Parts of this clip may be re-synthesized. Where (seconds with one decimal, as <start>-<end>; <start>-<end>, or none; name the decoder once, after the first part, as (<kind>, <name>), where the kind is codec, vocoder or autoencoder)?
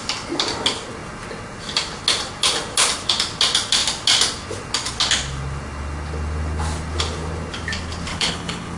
8.1-8.8 (codec, HILCodec)